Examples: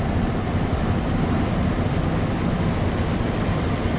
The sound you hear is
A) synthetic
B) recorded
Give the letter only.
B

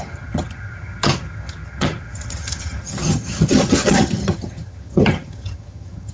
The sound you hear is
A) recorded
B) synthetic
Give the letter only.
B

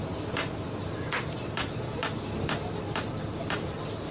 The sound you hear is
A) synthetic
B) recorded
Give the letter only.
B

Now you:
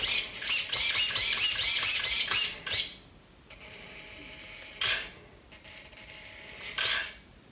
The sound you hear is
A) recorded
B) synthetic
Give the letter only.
A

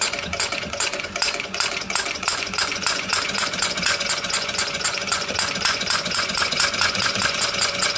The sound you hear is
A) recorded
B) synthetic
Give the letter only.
B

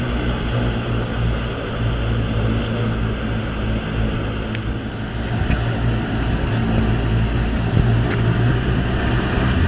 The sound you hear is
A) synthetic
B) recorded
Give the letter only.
B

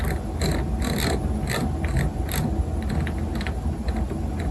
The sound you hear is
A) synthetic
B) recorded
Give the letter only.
B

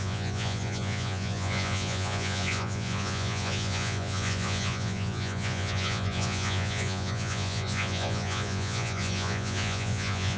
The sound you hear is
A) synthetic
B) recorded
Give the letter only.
A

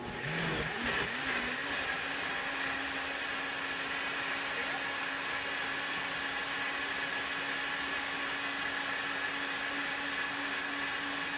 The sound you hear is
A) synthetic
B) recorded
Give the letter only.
B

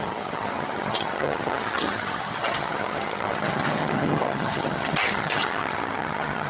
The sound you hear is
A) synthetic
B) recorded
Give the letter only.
A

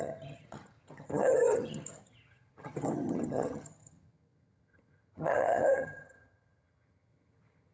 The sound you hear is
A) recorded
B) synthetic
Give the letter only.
B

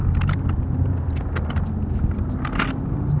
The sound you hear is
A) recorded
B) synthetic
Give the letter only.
A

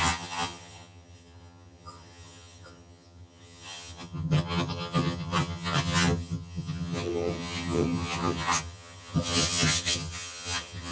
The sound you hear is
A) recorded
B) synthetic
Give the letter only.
B